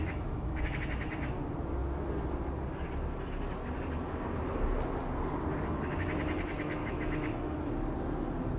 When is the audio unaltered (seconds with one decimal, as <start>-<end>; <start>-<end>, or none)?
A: 0.8-6.8; 7.7-8.6